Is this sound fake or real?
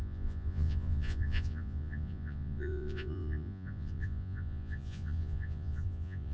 fake